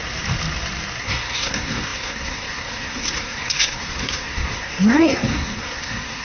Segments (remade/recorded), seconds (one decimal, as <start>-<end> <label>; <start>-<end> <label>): 0.0-1.0 recorded; 1.0-6.2 remade